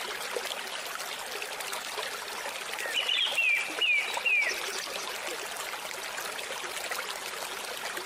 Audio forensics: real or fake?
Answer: real